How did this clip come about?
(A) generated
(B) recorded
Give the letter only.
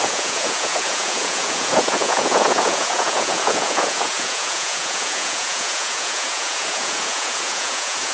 A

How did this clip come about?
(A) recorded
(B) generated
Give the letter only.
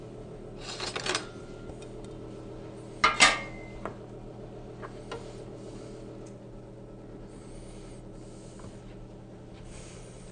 A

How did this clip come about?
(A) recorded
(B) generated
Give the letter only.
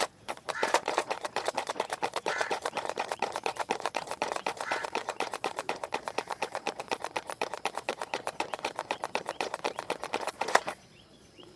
B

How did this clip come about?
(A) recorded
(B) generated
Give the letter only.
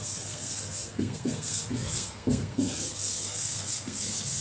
B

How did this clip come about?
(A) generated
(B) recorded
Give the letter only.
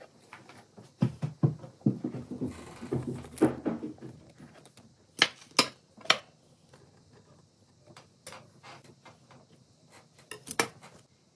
B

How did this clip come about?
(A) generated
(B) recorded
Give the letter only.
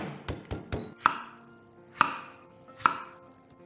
B